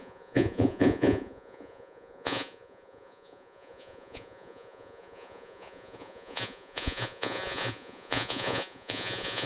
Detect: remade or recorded remade